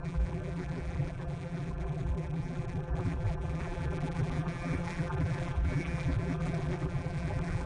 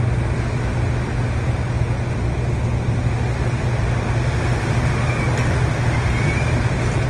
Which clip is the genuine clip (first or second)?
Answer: second